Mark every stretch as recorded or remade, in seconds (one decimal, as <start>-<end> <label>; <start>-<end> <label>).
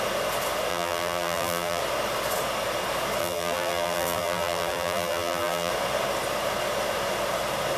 0.0-0.7 recorded; 0.7-1.8 remade; 1.8-3.2 recorded; 3.2-5.7 remade; 5.7-7.8 recorded